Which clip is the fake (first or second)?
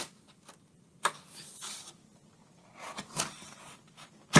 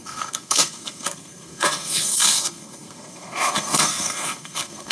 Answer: second